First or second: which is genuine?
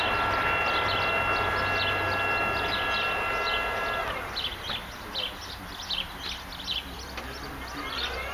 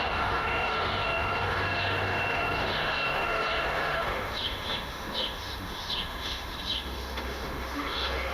first